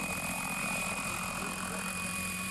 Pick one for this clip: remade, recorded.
remade